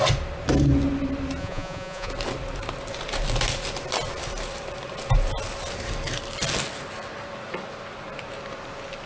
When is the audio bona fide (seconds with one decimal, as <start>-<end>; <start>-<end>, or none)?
0.0-1.4; 2.1-9.1